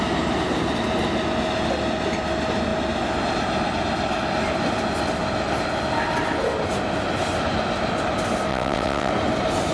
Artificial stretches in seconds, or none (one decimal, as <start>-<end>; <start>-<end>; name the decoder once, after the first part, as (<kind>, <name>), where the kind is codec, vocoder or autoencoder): 8.5-9.1 (vocoder, WaveNeXt)